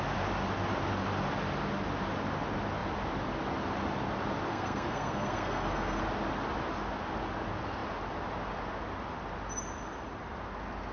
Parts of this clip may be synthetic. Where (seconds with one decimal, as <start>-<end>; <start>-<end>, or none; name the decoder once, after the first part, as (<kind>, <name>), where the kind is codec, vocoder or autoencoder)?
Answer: 4.5-6.0 (codec, SNAC)